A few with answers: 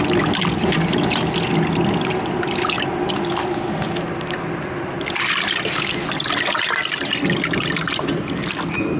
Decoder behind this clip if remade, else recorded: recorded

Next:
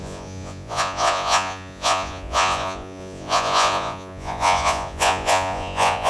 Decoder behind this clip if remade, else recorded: remade, vocoder, Vocos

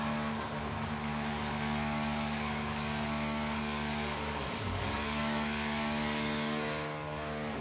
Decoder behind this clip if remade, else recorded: remade, codec, DAC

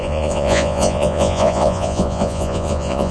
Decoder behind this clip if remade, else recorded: remade, vocoder, Vocos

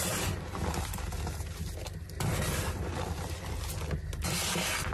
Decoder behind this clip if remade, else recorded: recorded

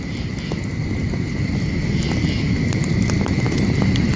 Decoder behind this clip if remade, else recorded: recorded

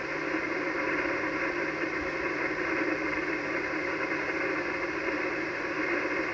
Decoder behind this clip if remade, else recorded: recorded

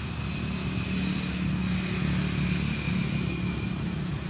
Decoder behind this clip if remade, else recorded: recorded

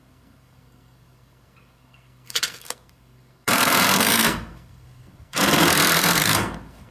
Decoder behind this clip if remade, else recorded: remade, codec, SNAC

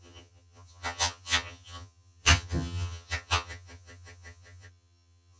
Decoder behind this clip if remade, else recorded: remade, vocoder, HiFi-GAN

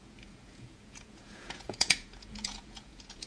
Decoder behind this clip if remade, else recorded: remade, vocoder, Vocos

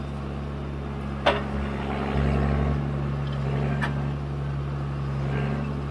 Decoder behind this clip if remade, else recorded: recorded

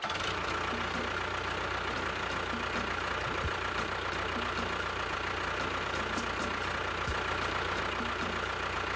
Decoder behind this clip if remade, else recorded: recorded